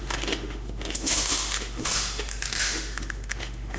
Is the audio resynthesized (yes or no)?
yes